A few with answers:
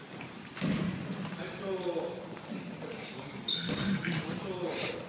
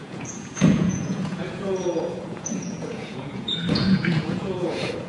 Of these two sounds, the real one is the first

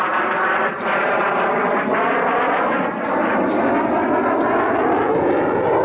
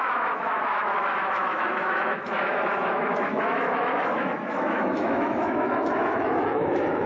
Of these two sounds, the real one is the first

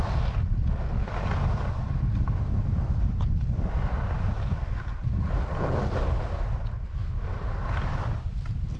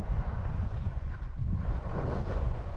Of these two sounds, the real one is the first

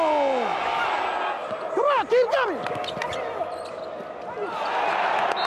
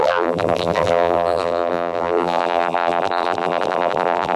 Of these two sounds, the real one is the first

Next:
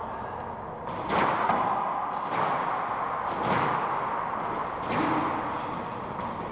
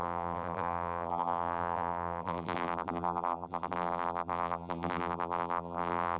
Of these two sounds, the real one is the first